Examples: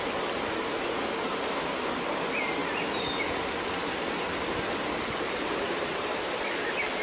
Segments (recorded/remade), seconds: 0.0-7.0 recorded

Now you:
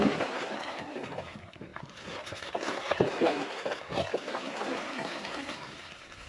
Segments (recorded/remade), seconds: 0.0-6.3 remade

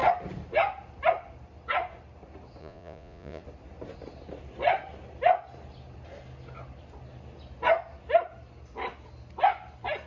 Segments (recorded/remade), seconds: 0.0-2.6 recorded; 2.6-3.4 remade; 3.4-10.1 recorded